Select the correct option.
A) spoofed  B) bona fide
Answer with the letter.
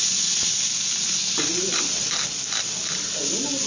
B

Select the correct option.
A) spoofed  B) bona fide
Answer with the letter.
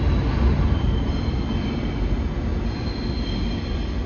B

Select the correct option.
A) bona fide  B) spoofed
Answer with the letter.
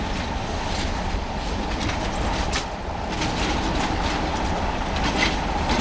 A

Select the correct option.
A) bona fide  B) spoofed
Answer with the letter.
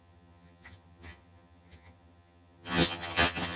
B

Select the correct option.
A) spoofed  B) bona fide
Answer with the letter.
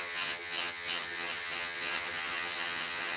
A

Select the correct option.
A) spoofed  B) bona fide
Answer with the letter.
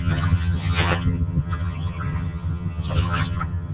A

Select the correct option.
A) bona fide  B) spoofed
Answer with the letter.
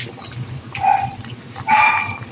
A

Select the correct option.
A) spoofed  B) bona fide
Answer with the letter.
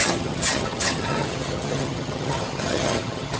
A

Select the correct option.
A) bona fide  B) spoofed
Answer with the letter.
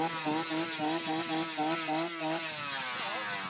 A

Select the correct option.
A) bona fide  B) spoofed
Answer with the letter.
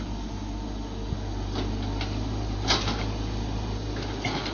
A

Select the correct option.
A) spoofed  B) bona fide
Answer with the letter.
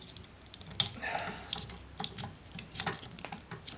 B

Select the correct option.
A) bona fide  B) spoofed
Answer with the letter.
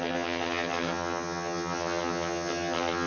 B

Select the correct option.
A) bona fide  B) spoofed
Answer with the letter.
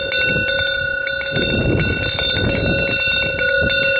A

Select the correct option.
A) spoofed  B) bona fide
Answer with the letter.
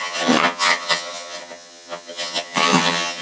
A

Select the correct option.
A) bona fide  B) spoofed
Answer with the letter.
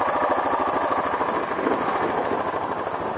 A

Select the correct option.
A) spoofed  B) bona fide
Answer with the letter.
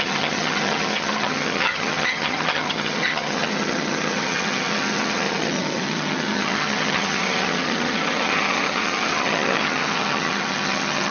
A